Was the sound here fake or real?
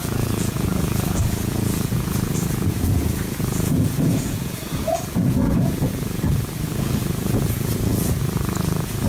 fake